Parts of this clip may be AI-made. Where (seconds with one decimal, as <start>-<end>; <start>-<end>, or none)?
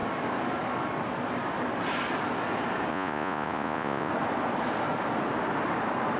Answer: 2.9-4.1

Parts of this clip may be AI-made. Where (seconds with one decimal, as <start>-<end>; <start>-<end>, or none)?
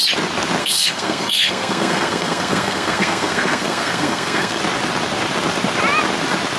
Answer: 0.6-4.6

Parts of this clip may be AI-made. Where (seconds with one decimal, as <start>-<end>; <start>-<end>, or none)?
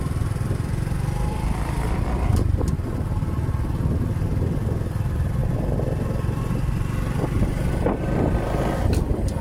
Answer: 0.0-2.3; 4.9-5.4; 8.9-9.4